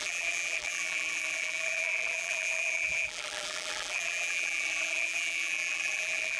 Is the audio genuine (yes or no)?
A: no